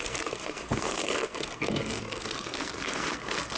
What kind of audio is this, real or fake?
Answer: fake